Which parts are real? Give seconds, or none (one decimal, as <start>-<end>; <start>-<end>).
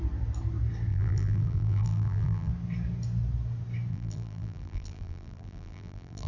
0.0-0.9; 2.5-3.9